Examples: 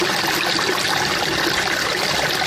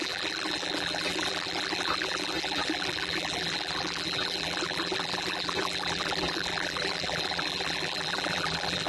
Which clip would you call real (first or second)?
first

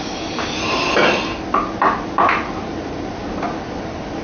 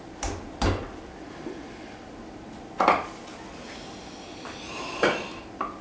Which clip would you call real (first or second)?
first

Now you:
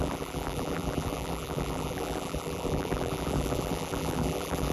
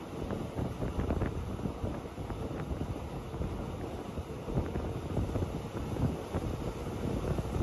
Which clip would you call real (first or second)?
second